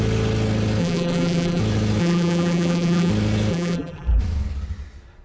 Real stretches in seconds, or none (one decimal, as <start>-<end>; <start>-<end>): 0.0-0.8; 1.6-2.0; 3.1-3.5; 4.2-5.2

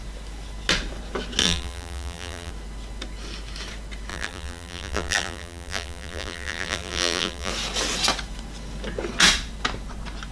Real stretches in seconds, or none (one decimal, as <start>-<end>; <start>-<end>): 0.0-1.4; 2.5-4.1; 7.5-10.3

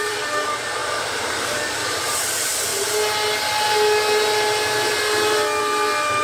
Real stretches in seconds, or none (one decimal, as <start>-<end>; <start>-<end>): 2.7-5.6

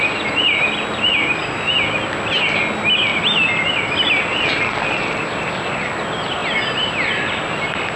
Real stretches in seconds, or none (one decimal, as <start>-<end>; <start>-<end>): 0.0-8.0